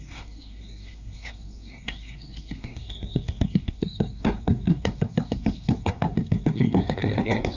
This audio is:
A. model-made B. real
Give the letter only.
A